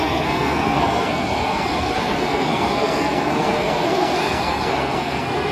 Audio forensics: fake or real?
fake